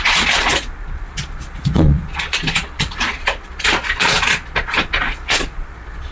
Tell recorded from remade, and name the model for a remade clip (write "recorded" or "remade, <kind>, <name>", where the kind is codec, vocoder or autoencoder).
remade, vocoder, Vocos